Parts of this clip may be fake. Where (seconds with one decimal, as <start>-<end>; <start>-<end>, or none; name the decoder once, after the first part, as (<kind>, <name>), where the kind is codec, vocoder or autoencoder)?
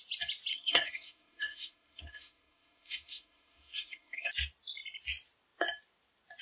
0.5-4.3 (codec, SNAC)